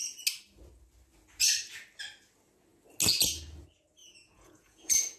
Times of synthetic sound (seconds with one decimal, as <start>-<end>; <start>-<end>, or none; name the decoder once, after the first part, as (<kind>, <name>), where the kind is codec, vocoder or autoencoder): 4.0-5.2 (vocoder, Vocos)